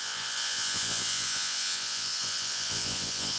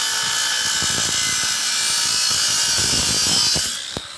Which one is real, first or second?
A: second